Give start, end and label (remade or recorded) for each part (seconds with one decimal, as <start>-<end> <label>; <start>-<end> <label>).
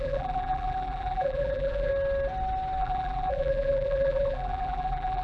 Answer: 0.0-1.9 remade; 1.9-2.8 recorded; 2.8-5.2 remade